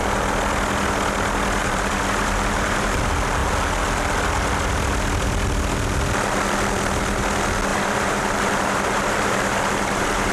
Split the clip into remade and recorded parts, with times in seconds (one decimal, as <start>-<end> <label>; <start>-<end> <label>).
0.0-1.6 recorded; 1.6-3.0 remade; 3.0-7.7 recorded; 7.7-10.3 remade